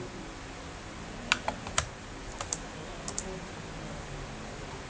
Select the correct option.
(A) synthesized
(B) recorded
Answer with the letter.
B